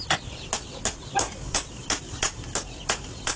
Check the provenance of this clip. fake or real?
real